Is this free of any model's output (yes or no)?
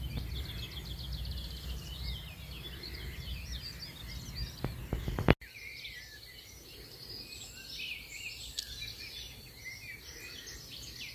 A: yes